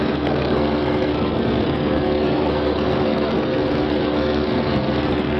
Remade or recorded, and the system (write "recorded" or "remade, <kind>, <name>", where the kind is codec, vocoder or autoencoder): remade, codec, SNAC